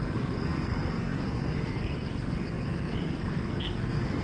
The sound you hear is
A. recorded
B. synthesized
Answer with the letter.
B